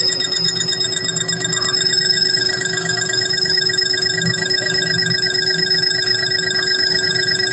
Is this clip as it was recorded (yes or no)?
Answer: no